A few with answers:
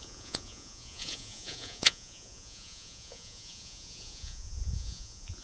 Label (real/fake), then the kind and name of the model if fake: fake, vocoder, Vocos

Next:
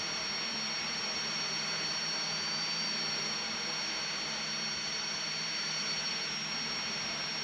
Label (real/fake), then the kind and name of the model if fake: fake, vocoder, BigVGAN v2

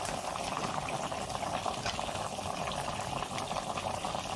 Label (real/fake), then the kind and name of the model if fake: real